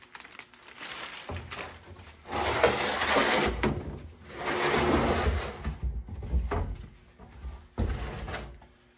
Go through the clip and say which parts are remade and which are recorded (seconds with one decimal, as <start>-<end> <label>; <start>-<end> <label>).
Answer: 0.0-9.0 recorded